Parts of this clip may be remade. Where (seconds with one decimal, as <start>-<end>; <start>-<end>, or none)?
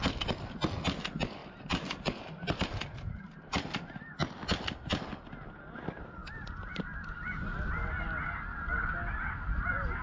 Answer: 1.4-4.0